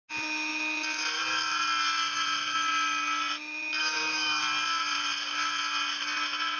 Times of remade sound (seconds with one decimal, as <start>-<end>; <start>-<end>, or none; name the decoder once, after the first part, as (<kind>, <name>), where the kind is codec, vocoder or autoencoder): 3.8-4.4 (autoencoder, DAC-VAE)